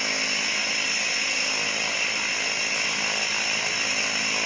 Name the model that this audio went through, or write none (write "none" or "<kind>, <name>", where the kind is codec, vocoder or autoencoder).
none